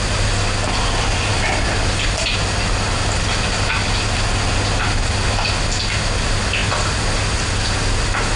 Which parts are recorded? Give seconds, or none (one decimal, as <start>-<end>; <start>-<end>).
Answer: 0.0-8.4